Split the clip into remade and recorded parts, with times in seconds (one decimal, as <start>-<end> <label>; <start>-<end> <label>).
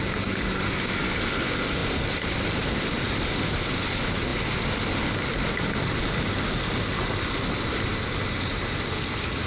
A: 0.0-9.5 recorded